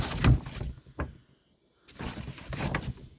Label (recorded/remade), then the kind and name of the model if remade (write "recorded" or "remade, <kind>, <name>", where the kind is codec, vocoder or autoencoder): recorded